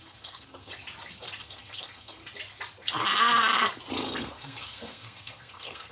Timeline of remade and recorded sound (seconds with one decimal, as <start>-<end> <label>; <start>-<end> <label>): 0.0-0.7 remade; 0.7-1.4 recorded; 1.4-2.2 remade; 2.2-4.0 recorded; 4.0-5.9 remade